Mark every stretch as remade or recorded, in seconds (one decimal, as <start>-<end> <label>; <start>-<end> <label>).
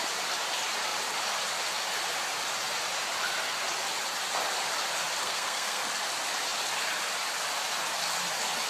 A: 0.0-5.2 recorded; 5.2-5.9 remade; 5.9-8.7 recorded